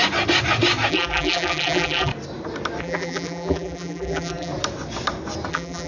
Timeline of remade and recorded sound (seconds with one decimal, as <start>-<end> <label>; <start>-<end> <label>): 0.0-0.9 recorded; 0.9-2.1 remade; 2.1-2.8 recorded; 2.8-4.5 remade; 4.5-5.5 recorded; 5.5-5.9 remade